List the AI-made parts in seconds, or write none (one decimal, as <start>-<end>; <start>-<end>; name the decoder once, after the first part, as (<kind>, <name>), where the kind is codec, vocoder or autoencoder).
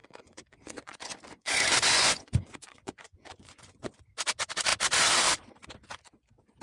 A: 0.0-4.0 (vocoder, Vocos)